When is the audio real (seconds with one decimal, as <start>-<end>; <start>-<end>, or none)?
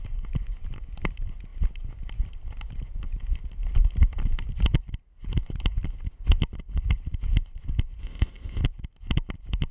0.0-8.0; 8.6-9.7